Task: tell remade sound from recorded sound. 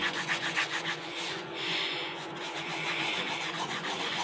remade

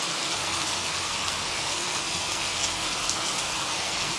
remade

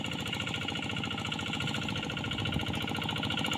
recorded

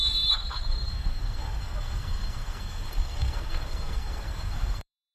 remade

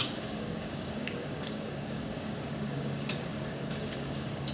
remade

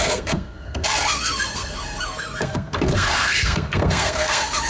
remade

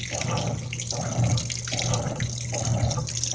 recorded